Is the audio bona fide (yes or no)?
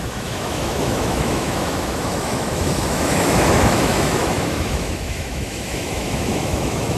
no